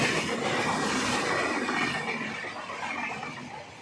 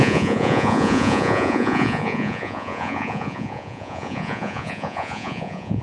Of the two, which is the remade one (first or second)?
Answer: second